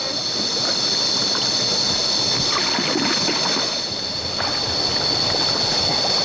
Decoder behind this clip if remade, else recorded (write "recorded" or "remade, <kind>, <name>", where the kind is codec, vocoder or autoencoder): recorded